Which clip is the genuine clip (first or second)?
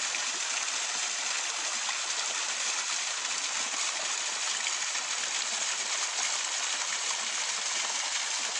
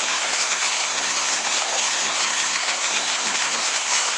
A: first